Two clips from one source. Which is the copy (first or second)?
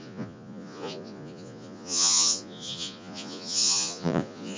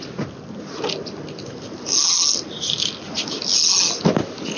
first